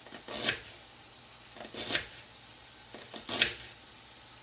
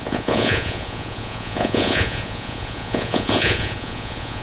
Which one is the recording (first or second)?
first